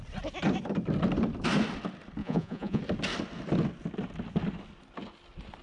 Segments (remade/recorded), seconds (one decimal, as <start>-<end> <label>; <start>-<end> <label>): 0.0-2.2 recorded; 2.2-2.8 remade; 2.8-5.6 recorded